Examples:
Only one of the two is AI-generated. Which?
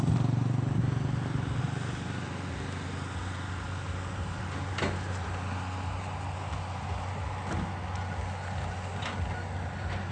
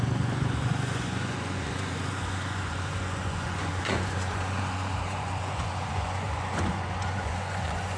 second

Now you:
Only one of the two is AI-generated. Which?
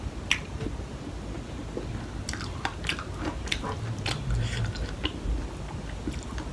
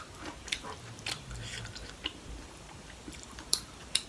second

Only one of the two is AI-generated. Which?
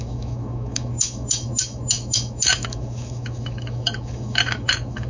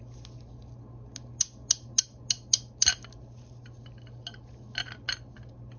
first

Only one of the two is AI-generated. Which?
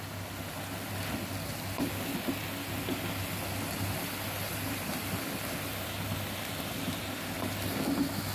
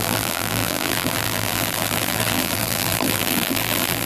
second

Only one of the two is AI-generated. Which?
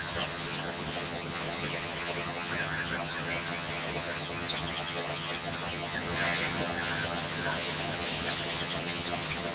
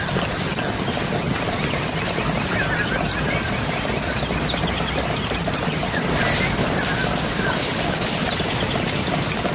first